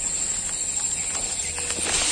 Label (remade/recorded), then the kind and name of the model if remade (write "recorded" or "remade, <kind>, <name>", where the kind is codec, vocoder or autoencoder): recorded